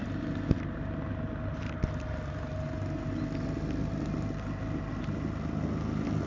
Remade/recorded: recorded